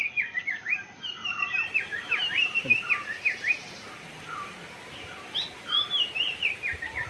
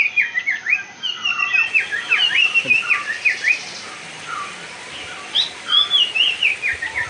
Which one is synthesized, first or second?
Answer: first